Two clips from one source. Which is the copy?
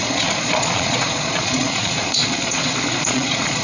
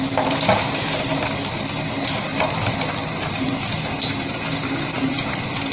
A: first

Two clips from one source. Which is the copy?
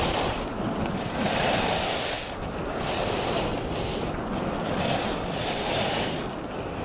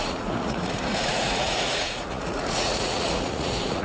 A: second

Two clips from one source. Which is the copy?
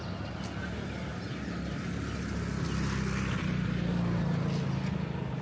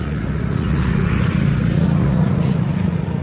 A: second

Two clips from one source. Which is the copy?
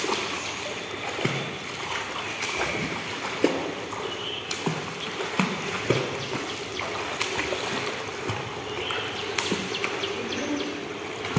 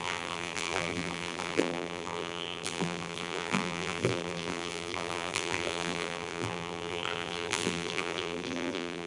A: second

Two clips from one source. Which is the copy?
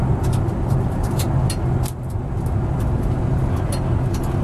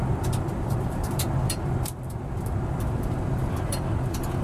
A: second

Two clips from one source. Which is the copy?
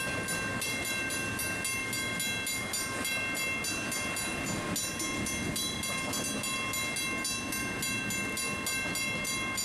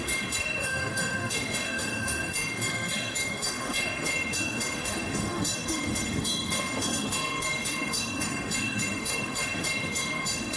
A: second